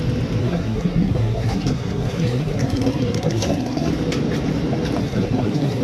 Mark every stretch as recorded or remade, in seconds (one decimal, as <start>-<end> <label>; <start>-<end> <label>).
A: 0.0-0.4 recorded; 0.4-3.9 remade; 3.9-5.0 recorded; 5.0-5.8 remade

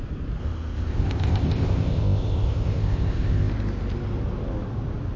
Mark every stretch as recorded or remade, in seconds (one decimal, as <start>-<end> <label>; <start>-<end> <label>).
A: 0.0-0.4 recorded; 0.4-3.5 remade; 3.5-5.2 recorded

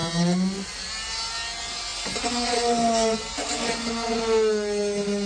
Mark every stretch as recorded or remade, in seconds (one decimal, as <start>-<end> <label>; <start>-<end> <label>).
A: 0.0-5.3 recorded

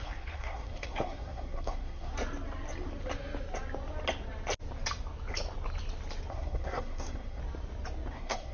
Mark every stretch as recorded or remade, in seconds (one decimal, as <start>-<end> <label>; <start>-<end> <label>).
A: 0.0-2.1 remade; 2.1-6.3 recorded; 6.3-7.4 remade; 7.4-8.1 recorded; 8.1-8.5 remade

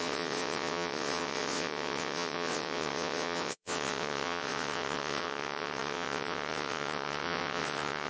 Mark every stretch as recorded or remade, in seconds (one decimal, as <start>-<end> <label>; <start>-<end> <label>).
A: 0.0-8.1 remade

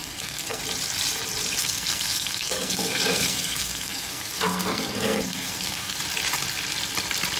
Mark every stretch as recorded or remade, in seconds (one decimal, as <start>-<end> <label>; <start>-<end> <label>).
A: 0.0-0.6 remade; 0.6-1.6 recorded; 1.6-6.0 remade; 6.0-7.4 recorded

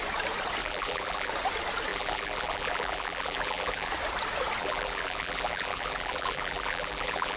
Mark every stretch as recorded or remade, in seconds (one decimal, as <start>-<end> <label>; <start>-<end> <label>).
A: 0.0-0.6 recorded; 0.6-1.3 remade; 1.3-1.9 recorded; 1.9-3.9 remade; 3.9-4.6 recorded; 4.6-7.4 remade

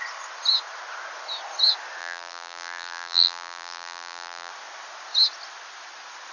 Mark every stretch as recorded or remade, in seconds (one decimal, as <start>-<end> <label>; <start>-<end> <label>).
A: 0.0-2.0 recorded; 2.0-4.5 remade; 4.5-6.3 recorded